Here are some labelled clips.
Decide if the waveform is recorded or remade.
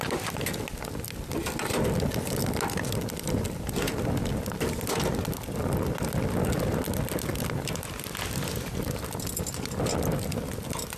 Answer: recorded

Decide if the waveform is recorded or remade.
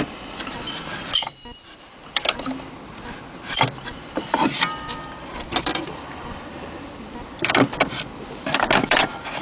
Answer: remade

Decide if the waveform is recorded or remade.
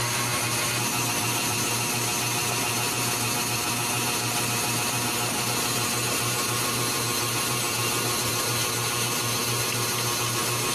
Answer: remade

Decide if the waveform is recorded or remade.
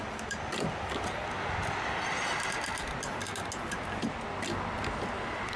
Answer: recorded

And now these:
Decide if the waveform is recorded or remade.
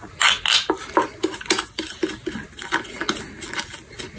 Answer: recorded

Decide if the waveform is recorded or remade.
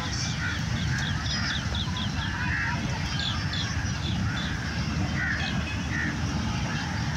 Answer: recorded